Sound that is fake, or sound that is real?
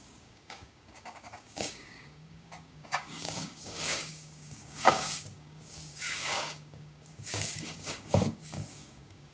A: fake